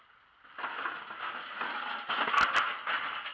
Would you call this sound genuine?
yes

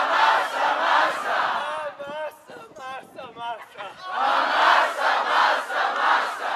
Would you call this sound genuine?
yes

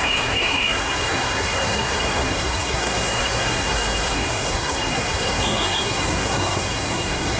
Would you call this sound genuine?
no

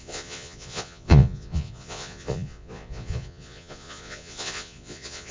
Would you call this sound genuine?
no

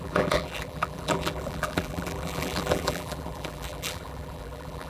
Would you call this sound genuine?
no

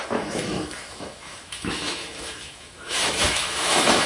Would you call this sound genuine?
no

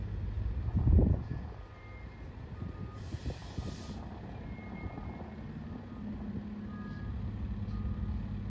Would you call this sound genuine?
yes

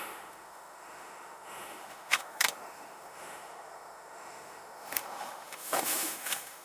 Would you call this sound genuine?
no